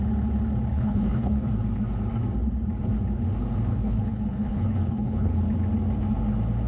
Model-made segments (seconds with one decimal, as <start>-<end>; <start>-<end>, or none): 0.7-1.5; 3.7-5.4